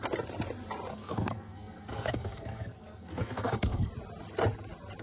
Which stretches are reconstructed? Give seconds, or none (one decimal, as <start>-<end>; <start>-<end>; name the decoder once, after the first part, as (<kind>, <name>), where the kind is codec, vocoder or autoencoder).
0.9-3.9 (codec, SNAC)